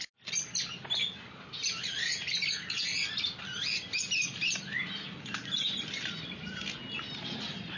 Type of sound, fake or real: real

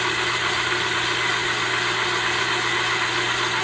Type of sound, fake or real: real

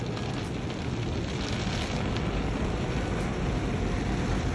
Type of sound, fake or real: real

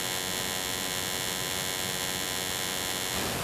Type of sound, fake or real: real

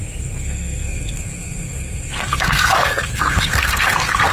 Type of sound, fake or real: fake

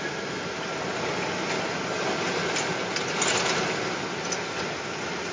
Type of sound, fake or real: real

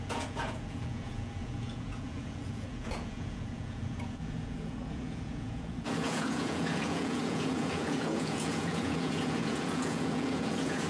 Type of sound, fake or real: fake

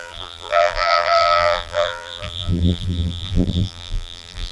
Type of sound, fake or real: fake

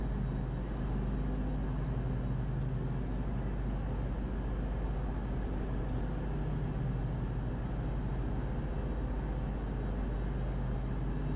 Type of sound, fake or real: real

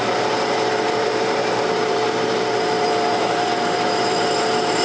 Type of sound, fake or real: fake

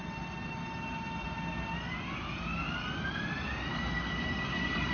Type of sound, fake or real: real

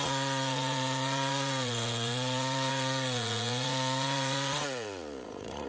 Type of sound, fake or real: fake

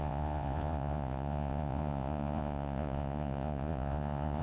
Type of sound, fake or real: fake